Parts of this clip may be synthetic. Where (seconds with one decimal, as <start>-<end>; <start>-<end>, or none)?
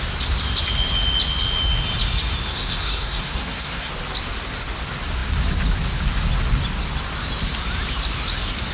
2.5-3.9